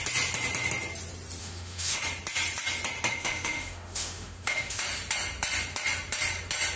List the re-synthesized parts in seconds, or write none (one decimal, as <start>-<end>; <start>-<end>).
1.4-2.0; 3.1-4.8